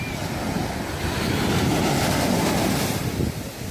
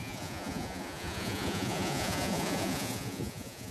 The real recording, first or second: first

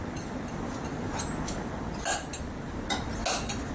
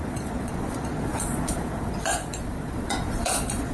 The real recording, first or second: first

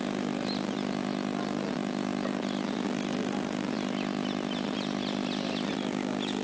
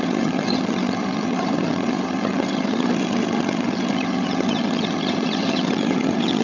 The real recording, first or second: first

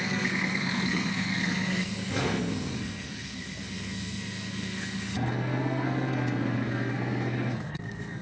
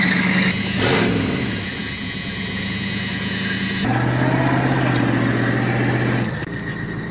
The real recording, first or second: second